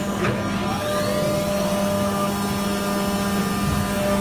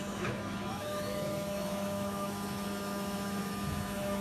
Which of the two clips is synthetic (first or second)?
second